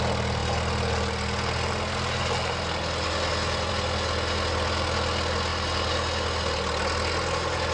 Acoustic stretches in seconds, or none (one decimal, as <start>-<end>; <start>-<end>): 0.0-7.7